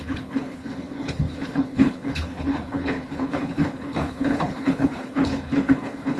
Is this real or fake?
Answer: fake